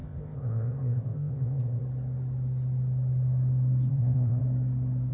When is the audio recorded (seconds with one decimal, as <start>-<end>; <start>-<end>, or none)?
1.8-3.9; 4.4-5.1